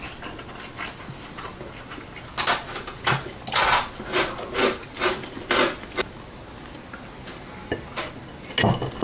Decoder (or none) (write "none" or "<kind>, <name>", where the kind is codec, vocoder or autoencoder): none